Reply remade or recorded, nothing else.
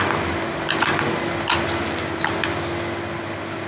recorded